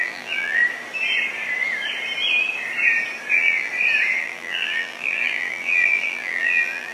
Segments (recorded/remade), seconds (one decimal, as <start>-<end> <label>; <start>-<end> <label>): 0.0-0.6 remade; 0.6-3.3 recorded; 3.3-3.7 remade; 3.7-4.2 recorded; 4.2-6.9 remade